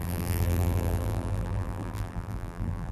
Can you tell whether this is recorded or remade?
remade